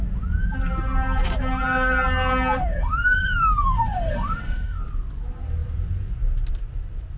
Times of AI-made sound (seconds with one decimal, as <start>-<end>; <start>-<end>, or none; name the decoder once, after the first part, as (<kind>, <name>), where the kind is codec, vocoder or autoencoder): 2.6-4.8 (autoencoder, DAC-VAE)